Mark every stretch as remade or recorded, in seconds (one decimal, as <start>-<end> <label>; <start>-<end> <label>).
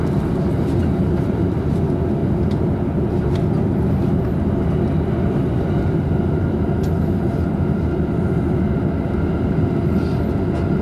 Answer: 0.0-0.8 recorded; 0.8-1.5 remade; 1.5-2.2 recorded; 2.2-3.1 remade; 3.1-10.8 recorded